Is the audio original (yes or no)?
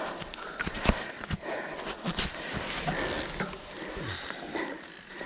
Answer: yes